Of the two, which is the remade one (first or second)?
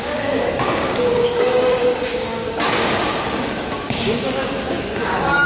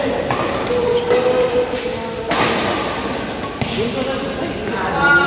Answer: first